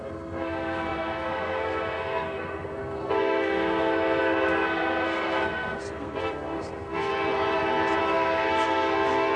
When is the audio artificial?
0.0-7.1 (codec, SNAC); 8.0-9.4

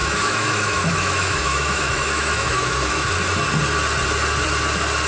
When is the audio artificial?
0.0-3.1 (autoencoder, DAC-VAE)

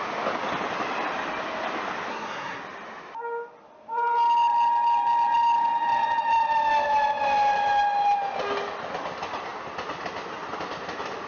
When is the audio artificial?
2.1-2.6 (codec, SNAC)